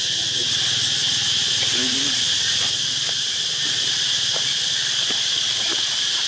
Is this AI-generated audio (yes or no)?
yes